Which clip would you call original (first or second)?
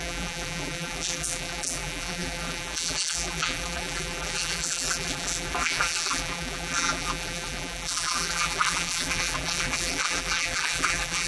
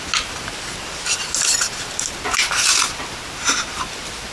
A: second